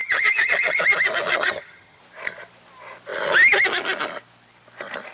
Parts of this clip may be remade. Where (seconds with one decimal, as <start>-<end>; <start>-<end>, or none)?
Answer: 0.0-0.8; 1.3-2.0